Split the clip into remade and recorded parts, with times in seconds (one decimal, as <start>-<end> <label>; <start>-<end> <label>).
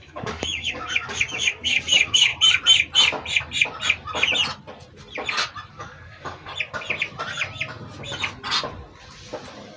0.0-2.3 remade; 2.3-5.7 recorded; 5.7-6.5 remade; 6.5-9.8 recorded